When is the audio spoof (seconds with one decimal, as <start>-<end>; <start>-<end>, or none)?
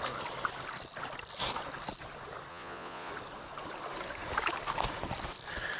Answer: 2.5-3.1